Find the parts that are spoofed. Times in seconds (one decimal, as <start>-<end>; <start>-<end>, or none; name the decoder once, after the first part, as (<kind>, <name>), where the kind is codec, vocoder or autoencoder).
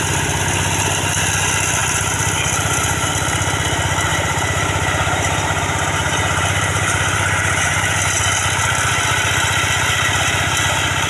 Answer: 1.8-3.1 (vocoder, BigVGAN v2); 4.1-8.0